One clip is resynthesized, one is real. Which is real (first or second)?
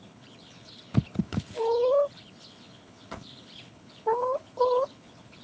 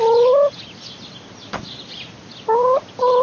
second